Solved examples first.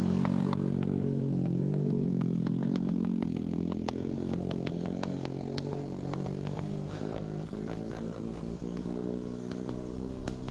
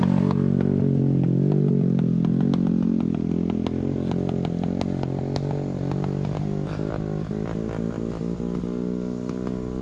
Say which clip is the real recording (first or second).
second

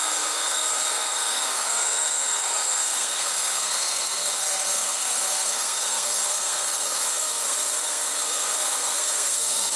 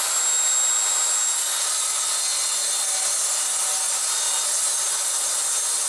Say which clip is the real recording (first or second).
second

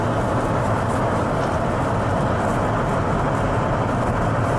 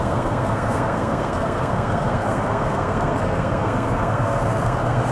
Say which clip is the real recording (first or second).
first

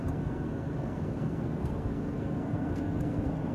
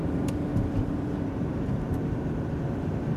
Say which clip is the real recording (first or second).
second